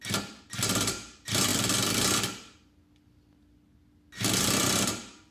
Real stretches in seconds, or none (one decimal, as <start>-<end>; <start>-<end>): 0.0-5.3